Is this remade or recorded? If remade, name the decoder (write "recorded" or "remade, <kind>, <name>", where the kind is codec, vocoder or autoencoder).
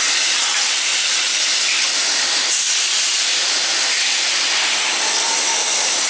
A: recorded